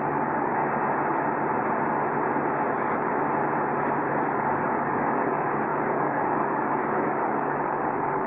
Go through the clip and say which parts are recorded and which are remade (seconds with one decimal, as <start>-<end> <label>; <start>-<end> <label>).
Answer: 0.0-0.6 remade; 0.6-2.7 recorded; 2.7-3.1 remade; 3.1-4.1 recorded; 4.1-8.3 remade